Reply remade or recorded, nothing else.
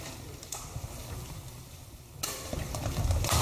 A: remade